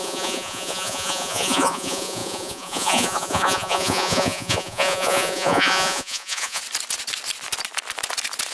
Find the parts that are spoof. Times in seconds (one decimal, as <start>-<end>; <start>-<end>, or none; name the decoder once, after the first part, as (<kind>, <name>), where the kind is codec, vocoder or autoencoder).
0.0-6.6 (vocoder, Vocos)